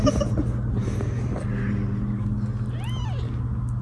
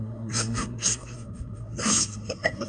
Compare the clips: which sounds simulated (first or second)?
second